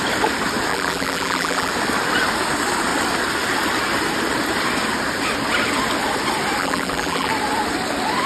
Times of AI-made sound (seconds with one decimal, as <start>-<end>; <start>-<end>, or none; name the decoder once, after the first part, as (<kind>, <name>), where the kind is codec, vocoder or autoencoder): 0.7-1.7 (vocoder, BigVGAN v2); 6.6-7.3